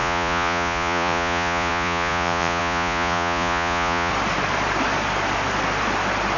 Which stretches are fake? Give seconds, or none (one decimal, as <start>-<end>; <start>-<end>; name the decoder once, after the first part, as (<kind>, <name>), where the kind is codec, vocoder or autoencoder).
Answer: 0.0-4.1 (vocoder, Vocos)